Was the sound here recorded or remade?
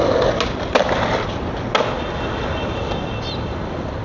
recorded